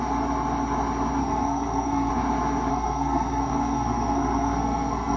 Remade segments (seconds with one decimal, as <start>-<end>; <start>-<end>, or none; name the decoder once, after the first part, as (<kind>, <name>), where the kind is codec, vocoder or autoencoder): 1.2-2.1 (codec, SNAC); 2.7-5.2

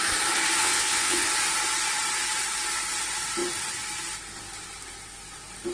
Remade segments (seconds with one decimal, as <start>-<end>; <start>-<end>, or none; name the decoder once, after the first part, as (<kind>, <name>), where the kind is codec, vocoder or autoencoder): 0.6-1.3 (vocoder, WaveNeXt)

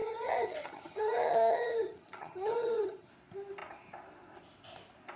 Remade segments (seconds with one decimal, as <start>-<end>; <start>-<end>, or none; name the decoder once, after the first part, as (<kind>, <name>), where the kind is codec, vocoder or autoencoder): 0.0-3.1 (vocoder, HiFi-GAN)

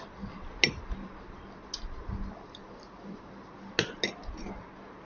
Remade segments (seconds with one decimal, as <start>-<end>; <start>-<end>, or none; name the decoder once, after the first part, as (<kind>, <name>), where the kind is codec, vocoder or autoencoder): 2.6-3.3 (vocoder, BigVGAN v2)